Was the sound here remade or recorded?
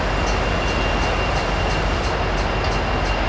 recorded